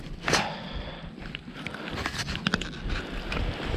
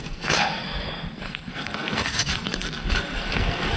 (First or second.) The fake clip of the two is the second